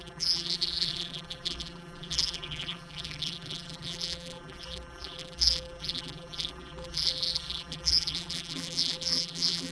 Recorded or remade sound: remade